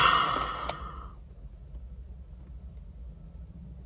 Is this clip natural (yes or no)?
yes